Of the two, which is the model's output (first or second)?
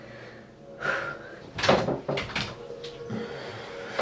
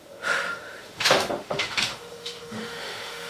second